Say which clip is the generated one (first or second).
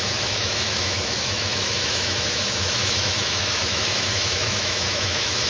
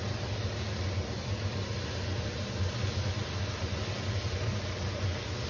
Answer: first